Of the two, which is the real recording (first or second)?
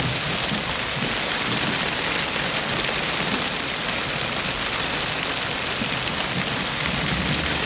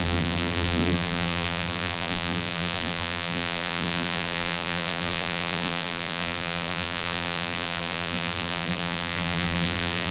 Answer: first